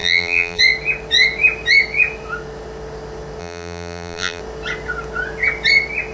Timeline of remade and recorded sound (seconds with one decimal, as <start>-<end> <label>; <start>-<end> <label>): 0.0-0.6 remade; 0.6-3.4 recorded; 3.4-4.4 remade; 4.4-6.1 recorded